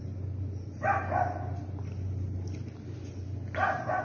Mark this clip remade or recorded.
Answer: recorded